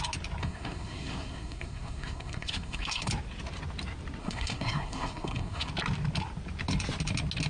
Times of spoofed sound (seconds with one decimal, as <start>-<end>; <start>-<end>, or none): 0.4-3.1; 4.2-5.7